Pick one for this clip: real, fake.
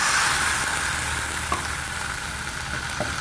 real